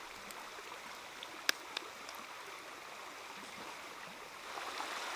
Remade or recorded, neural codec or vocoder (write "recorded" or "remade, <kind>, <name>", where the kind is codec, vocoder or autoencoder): recorded